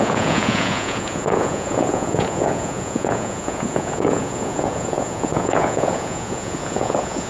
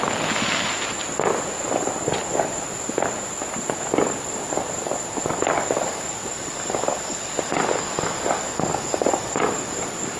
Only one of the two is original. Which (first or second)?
second